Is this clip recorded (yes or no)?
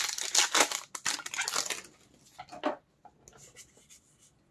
yes